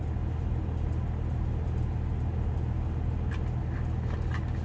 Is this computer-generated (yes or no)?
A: no